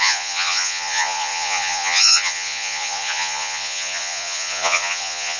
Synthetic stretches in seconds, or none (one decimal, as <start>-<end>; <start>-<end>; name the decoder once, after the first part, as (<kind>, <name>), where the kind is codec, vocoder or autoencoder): 0.0-5.4 (vocoder, Vocos)